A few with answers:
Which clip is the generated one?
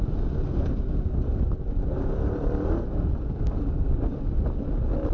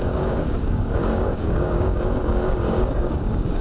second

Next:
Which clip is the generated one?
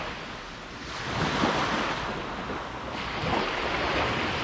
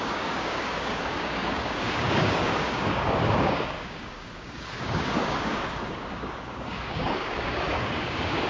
second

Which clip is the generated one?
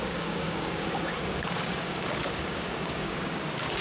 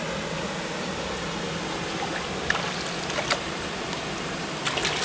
first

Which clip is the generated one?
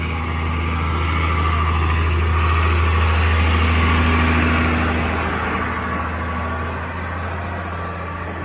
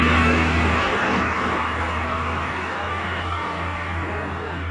second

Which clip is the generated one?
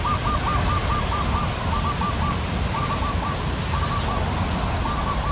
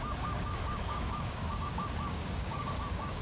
second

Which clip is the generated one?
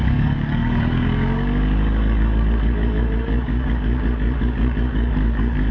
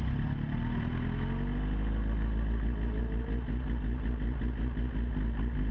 first